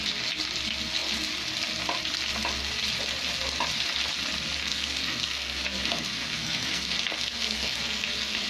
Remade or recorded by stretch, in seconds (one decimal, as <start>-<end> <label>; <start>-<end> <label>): 0.0-4.6 recorded; 4.6-8.5 remade